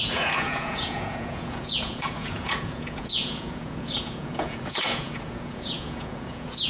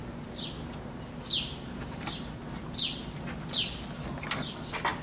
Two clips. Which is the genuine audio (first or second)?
second